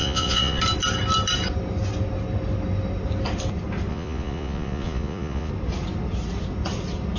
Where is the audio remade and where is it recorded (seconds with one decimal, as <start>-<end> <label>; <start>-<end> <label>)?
0.0-0.6 remade; 0.6-3.9 recorded; 3.9-5.5 remade; 5.5-7.2 recorded